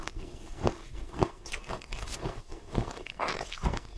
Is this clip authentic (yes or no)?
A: no